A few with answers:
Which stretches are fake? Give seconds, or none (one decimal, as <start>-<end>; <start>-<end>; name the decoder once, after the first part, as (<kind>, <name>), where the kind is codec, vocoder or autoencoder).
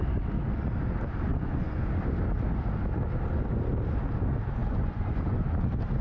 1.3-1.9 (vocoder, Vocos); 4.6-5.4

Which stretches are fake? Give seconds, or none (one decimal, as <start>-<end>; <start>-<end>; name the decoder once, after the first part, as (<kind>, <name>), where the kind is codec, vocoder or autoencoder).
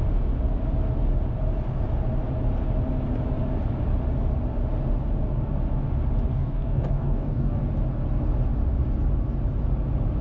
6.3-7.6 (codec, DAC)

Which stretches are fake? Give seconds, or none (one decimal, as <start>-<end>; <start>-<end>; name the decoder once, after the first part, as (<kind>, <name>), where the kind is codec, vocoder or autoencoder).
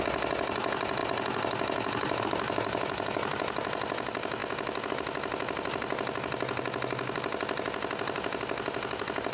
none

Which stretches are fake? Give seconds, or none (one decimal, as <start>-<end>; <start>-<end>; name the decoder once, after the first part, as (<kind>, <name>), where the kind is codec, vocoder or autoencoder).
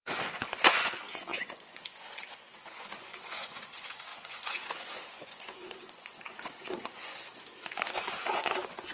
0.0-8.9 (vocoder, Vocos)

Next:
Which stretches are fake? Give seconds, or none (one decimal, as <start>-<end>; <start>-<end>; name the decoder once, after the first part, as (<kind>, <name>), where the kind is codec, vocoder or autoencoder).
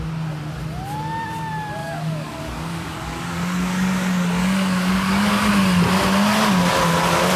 1.8-5.4 (codec, DAC)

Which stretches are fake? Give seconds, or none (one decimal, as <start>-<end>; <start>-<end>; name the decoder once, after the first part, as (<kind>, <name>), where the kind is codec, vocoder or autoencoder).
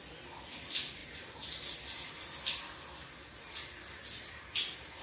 none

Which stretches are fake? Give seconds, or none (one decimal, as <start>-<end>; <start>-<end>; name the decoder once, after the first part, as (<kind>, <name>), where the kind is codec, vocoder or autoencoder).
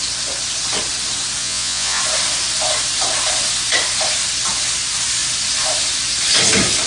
1.4-2.0 (vocoder, Vocos)